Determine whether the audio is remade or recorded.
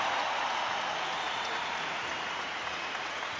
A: remade